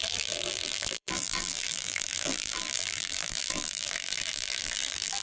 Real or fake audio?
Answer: fake